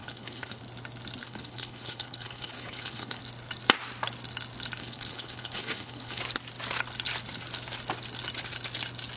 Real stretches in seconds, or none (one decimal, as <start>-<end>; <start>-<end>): 0.6-1.2; 3.2-4.8; 6.2-9.2